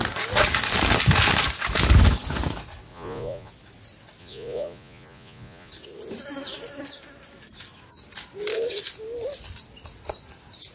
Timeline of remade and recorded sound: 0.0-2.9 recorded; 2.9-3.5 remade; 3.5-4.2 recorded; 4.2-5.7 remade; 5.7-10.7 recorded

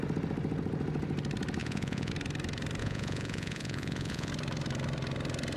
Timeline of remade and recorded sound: 0.0-1.6 recorded; 1.6-2.1 remade; 2.1-2.8 recorded; 2.8-4.3 remade; 4.3-5.6 recorded

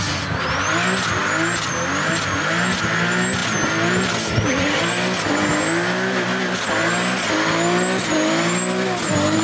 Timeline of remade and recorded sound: 0.0-9.4 recorded

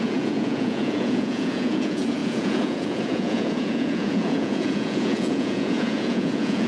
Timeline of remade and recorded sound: 0.0-6.7 remade

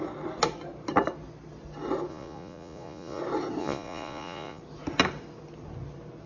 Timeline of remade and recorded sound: 0.0-2.1 recorded; 2.1-3.2 remade; 3.2-3.6 recorded; 3.6-4.6 remade; 4.6-6.3 recorded

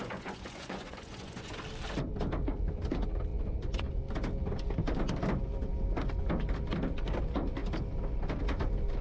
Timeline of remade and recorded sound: 0.0-1.6 remade; 1.6-9.0 recorded

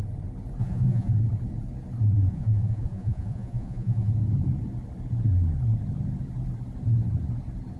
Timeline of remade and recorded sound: 0.0-0.6 recorded; 0.6-1.1 remade; 1.1-2.3 recorded; 2.3-4.1 remade; 4.1-7.8 recorded